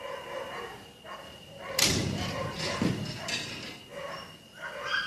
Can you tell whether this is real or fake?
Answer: real